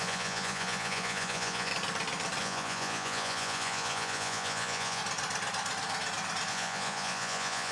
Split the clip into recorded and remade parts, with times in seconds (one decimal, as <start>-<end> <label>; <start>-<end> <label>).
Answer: 0.0-1.7 remade; 1.7-2.4 recorded; 2.4-5.0 remade; 5.0-6.5 recorded; 6.5-7.7 remade